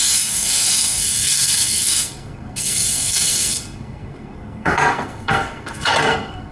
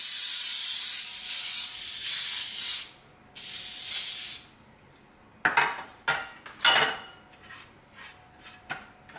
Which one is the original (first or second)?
second